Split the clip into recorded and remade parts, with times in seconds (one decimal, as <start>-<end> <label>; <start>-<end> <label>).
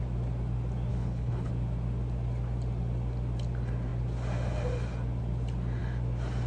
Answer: 0.0-0.9 recorded; 0.9-1.5 remade; 1.5-6.5 recorded